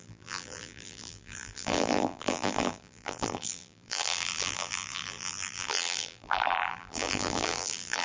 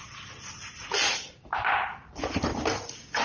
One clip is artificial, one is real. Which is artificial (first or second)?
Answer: first